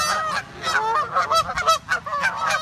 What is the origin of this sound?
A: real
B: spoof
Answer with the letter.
A